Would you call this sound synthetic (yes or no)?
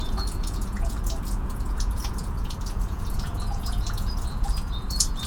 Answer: yes